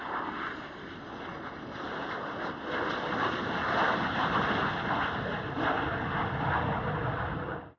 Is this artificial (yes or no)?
no